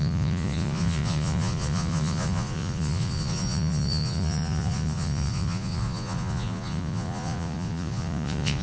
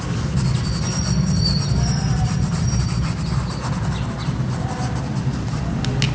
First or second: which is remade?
first